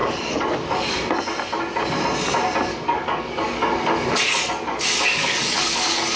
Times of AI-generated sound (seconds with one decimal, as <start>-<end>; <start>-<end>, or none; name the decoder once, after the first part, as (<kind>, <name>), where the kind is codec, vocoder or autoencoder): 0.0-0.9 (codec, DAC); 2.7-6.2